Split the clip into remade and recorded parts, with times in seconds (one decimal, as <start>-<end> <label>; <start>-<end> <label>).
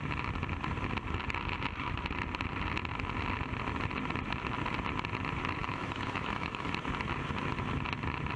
0.0-5.6 recorded; 5.6-6.7 remade; 6.7-8.4 recorded